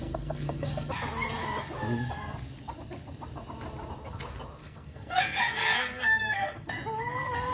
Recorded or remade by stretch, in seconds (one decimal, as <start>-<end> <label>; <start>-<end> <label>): 0.0-0.9 remade; 0.9-4.6 recorded; 4.6-6.7 remade; 6.7-7.5 recorded